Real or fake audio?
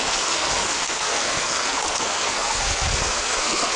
fake